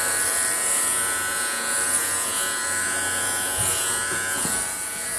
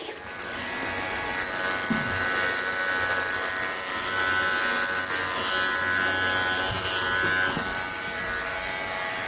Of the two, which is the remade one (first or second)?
first